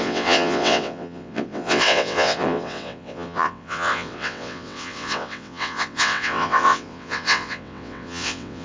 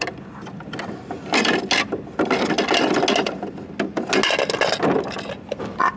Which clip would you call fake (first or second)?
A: first